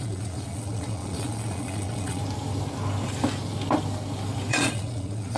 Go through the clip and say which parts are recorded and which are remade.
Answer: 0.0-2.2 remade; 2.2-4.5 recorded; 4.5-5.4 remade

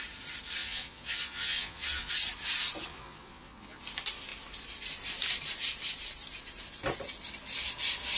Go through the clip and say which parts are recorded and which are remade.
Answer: 0.0-0.6 recorded; 0.6-2.1 remade; 2.1-2.9 recorded; 2.9-3.8 remade; 3.8-8.2 recorded

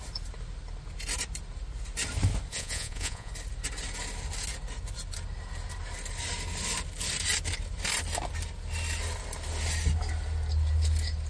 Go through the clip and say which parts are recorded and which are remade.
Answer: 0.0-2.5 recorded; 2.5-3.3 remade; 3.3-11.3 recorded

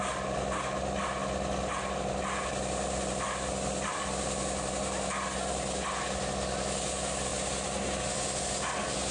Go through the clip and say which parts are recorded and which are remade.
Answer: 0.0-9.1 recorded

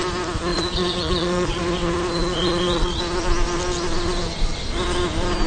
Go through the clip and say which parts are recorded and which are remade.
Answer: 0.0-0.5 recorded; 0.5-1.6 remade; 1.6-2.2 recorded; 2.2-3.0 remade; 3.0-5.5 recorded

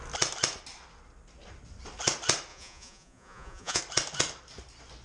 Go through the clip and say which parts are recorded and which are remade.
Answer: 0.0-2.5 recorded; 2.5-3.8 remade; 3.8-5.0 recorded

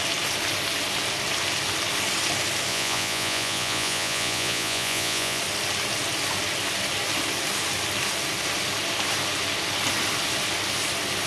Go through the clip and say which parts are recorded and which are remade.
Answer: 0.0-2.7 recorded; 2.7-5.4 remade; 5.4-11.3 recorded